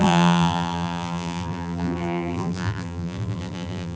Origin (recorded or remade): remade